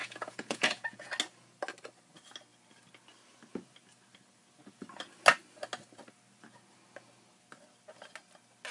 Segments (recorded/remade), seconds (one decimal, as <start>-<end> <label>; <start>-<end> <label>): 0.0-1.1 remade; 1.1-8.7 recorded